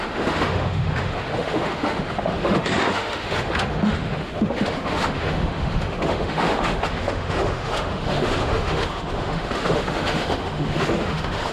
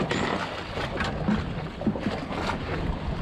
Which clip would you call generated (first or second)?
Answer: first